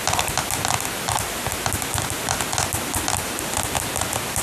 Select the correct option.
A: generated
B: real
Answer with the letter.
B